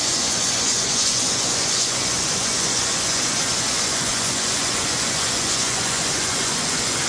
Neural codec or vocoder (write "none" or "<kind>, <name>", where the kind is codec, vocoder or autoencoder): vocoder, Vocos